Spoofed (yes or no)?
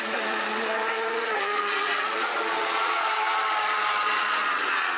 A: yes